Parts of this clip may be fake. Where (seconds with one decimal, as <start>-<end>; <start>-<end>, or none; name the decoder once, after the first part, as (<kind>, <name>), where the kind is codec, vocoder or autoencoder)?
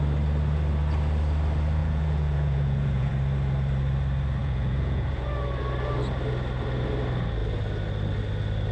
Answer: 1.8-3.1 (vocoder, Vocos); 4.4-5.3